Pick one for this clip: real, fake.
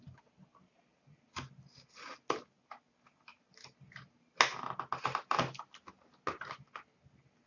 real